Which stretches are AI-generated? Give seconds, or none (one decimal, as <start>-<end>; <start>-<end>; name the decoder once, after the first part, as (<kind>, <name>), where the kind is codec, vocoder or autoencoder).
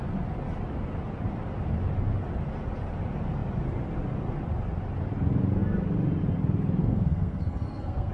6.8-8.1 (codec, SNAC)